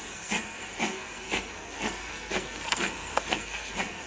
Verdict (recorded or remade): remade